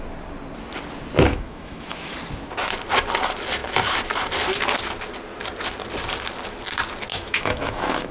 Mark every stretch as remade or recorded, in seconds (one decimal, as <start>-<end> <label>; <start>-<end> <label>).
0.0-1.3 recorded; 1.3-2.1 remade; 2.1-7.1 recorded; 7.1-8.1 remade